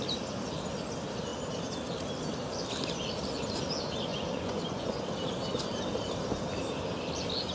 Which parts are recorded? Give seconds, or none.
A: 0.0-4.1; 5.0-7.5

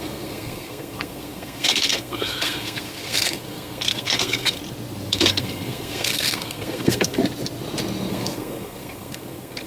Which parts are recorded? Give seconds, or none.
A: 4.6-5.1; 7.2-8.1

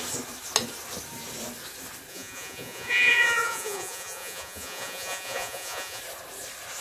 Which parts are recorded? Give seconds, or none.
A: 0.0-2.1; 6.0-6.8

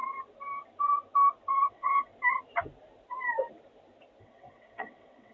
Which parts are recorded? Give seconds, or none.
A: 0.0-1.7; 2.1-4.2

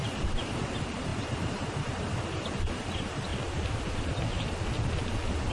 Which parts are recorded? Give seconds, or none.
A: 3.3-5.5